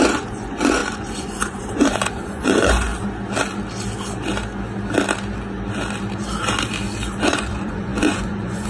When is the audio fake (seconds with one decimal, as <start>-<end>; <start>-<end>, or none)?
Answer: 0.0-2.9; 7.2-8.7